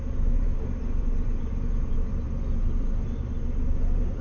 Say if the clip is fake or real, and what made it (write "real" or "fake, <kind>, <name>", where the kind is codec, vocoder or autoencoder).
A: fake, vocoder, BigVGAN v2